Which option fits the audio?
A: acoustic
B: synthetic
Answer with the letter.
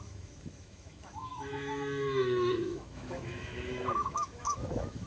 B